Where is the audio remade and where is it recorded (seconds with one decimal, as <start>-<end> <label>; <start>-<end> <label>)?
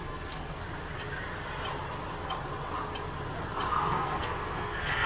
0.0-0.6 remade; 0.6-3.7 recorded; 3.7-5.1 remade